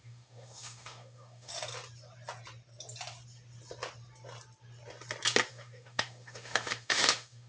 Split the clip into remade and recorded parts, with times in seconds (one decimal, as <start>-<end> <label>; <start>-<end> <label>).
0.0-1.5 remade; 1.5-5.5 recorded; 5.5-7.5 remade